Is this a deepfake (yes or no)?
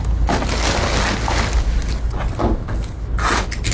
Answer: no